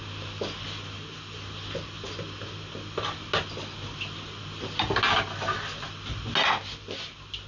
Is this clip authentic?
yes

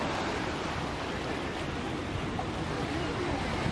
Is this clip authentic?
yes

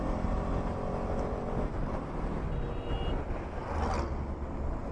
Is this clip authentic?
yes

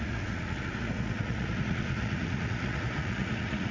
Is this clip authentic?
no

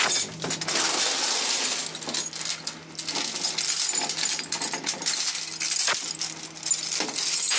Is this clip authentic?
yes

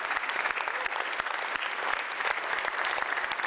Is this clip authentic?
yes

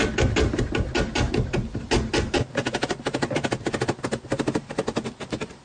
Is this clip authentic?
yes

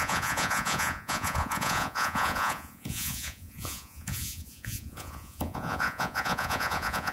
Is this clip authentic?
no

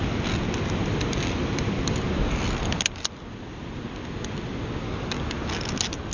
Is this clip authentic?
yes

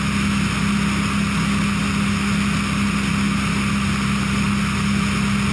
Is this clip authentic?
yes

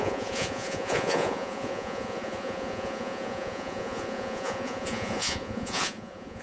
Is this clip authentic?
no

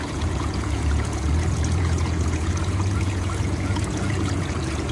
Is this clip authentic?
no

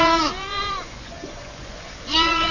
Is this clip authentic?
no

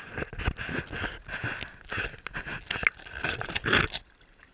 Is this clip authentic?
yes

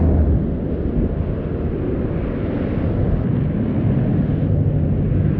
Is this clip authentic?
yes